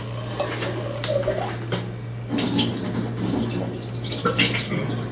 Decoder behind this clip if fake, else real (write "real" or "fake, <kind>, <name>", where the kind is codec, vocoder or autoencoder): real